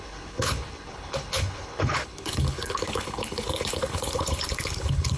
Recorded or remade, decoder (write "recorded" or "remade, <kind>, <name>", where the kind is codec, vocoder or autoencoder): remade, codec, HILCodec